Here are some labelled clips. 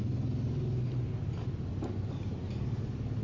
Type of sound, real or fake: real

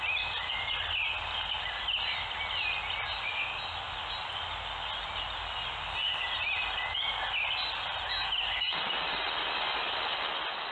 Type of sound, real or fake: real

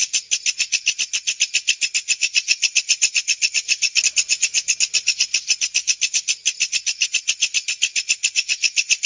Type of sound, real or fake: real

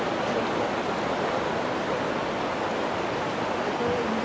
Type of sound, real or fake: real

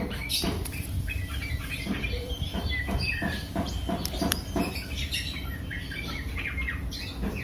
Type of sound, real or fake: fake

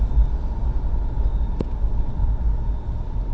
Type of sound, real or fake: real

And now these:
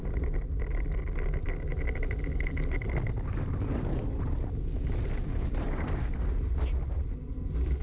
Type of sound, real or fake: real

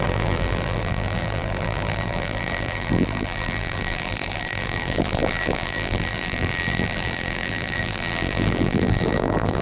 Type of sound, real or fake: fake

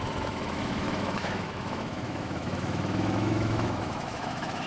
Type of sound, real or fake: fake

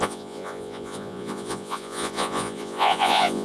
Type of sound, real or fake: fake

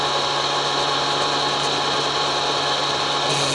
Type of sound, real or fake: real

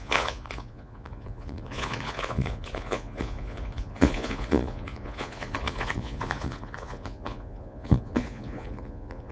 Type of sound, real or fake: fake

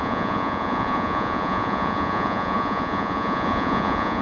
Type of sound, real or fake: fake